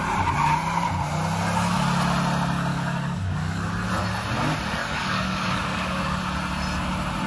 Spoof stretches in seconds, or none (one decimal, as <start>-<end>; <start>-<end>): 2.7-3.7; 4.8-6.2